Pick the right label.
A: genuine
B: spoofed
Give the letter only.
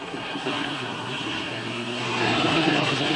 B